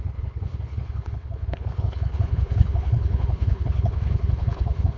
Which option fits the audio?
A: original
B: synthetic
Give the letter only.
B